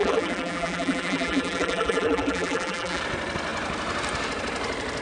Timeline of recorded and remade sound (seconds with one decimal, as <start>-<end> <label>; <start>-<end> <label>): 0.0-3.0 remade; 3.0-5.0 recorded